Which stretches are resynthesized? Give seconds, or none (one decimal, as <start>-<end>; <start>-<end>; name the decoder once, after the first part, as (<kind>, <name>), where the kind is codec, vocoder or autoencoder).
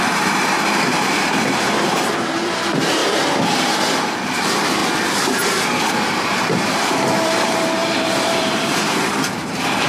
0.0-3.0 (vocoder, BigVGAN v2); 4.3-4.8; 5.9-9.9